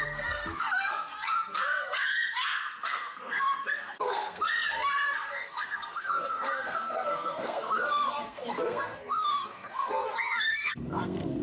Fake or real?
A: fake